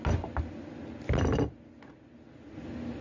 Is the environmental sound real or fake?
real